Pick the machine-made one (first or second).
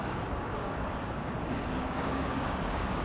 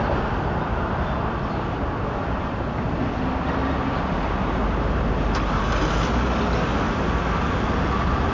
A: first